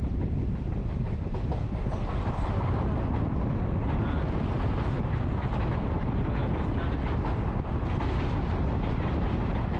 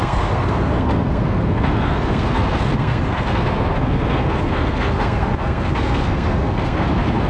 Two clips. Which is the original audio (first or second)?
first